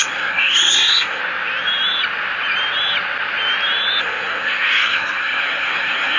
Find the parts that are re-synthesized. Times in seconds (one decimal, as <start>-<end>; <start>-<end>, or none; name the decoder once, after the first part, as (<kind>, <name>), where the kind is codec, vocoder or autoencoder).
0.0-1.2 (codec, SNAC); 4.0-6.2